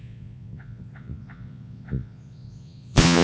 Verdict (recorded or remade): remade